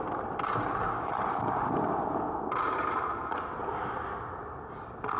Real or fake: real